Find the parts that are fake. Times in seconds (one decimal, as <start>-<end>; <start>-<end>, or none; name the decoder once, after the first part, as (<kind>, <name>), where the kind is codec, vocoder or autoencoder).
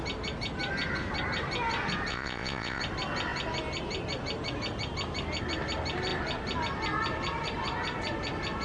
2.1-2.8 (vocoder, Vocos)